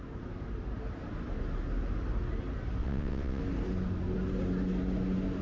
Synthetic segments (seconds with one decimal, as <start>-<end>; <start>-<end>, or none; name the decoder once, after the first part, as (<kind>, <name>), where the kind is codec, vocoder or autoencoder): 2.8-3.4 (vocoder, WaveNeXt)